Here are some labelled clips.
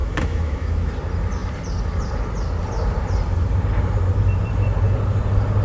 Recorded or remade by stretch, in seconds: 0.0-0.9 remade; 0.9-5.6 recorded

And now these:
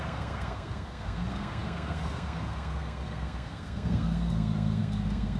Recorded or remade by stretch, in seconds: 0.0-5.4 remade

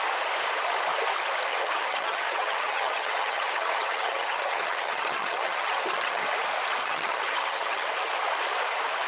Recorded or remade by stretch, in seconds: 0.0-1.5 recorded; 1.5-6.2 remade; 6.2-6.8 recorded; 6.8-7.9 remade; 7.9-9.1 recorded

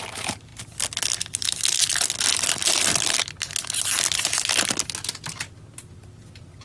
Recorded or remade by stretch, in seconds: 0.0-6.6 recorded